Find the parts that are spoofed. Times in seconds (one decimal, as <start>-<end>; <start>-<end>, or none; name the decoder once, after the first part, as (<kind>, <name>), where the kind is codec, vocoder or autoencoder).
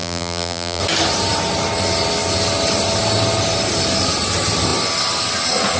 0.0-0.8 (vocoder, BigVGAN v2)